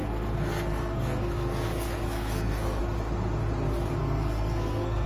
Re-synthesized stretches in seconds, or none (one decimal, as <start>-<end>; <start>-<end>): 0.0-2.8; 4.0-5.1